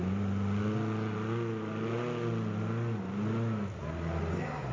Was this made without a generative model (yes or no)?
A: yes